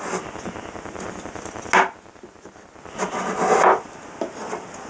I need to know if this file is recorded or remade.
recorded